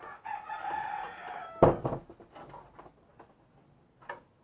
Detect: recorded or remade recorded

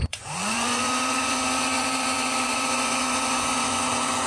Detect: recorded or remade remade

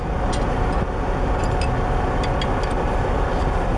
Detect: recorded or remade recorded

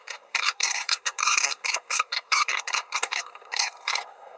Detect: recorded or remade remade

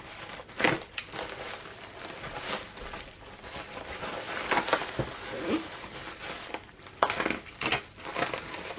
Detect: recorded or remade recorded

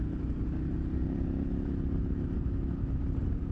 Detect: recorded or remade recorded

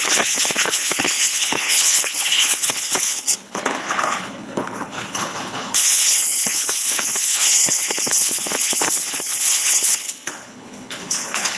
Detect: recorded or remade remade